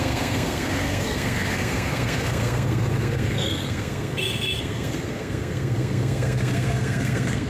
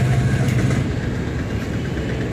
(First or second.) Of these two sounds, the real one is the second